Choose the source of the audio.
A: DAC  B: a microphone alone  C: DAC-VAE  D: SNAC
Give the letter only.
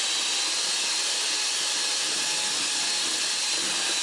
B